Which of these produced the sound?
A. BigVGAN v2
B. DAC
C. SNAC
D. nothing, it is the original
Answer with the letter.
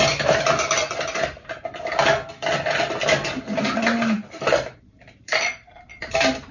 D